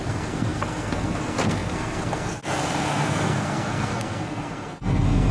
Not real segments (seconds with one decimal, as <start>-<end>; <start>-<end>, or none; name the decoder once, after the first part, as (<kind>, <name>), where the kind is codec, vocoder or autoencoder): 0.0-5.3 (codec, SNAC)